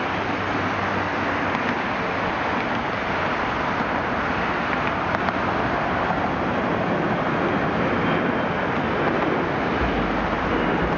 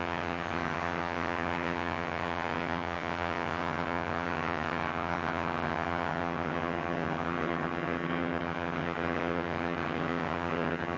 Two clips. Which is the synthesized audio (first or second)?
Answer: second